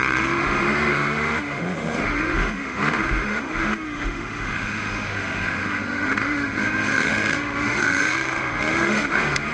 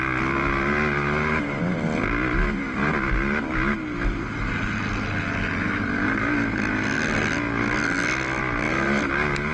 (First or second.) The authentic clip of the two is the second